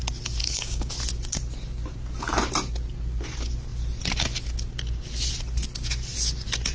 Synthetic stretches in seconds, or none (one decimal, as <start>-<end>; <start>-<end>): 0.4-0.9